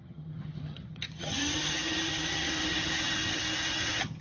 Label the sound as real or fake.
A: fake